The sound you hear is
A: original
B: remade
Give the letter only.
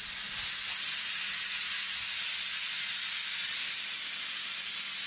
A